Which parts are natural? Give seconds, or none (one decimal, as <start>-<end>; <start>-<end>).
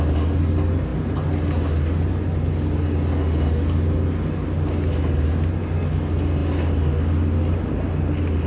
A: 0.0-8.5